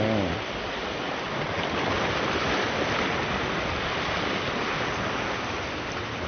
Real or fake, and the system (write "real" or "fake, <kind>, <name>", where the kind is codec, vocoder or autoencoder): real